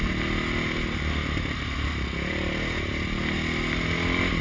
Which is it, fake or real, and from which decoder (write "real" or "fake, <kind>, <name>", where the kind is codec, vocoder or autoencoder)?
real